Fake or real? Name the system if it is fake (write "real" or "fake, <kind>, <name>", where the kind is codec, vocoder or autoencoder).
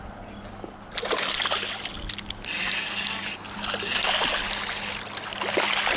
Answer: real